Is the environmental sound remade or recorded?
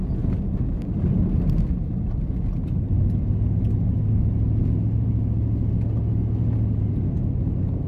recorded